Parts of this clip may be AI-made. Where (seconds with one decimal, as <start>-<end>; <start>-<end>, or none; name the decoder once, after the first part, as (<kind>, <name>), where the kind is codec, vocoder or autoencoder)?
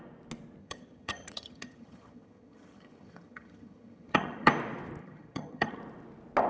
0.6-4.5 (vocoder, HiFi-GAN); 5.0-5.8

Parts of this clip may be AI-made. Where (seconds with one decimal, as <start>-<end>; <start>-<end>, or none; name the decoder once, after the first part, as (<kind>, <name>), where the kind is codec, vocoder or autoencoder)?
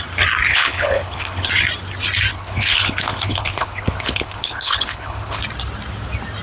0.5-1.5 (codec, HILCodec); 2.3-5.4